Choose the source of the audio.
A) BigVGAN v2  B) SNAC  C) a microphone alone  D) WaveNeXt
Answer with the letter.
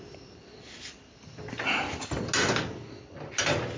C